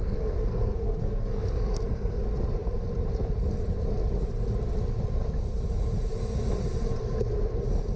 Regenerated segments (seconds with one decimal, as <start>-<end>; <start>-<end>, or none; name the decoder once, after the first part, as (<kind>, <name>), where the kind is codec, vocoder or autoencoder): 0.0-2.2 (codec, SNAC)